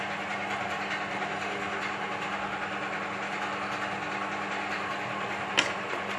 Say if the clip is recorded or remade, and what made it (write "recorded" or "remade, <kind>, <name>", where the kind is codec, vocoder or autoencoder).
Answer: recorded